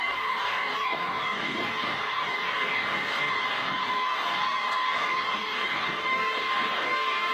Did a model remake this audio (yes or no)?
yes